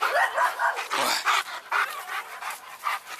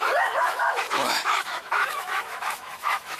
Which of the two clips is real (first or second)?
first